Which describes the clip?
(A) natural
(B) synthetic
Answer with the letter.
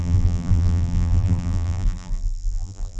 B